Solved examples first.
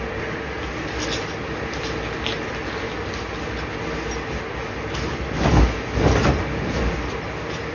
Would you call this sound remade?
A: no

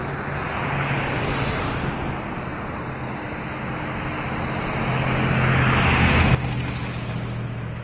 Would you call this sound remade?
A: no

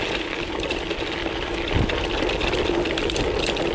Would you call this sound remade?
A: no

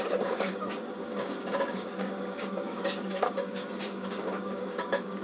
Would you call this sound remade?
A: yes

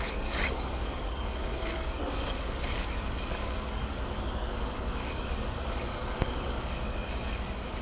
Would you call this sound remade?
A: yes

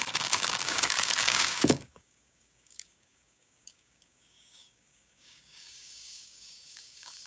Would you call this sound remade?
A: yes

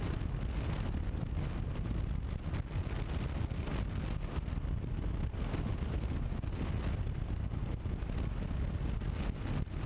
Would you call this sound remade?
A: no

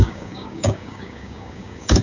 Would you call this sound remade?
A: yes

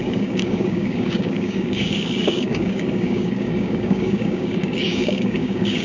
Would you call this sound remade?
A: yes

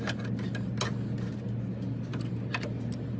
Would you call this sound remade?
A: no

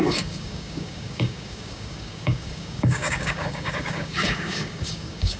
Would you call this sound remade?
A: yes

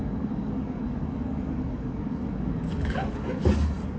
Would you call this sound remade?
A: yes